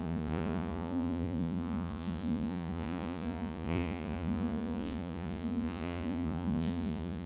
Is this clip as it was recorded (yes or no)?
no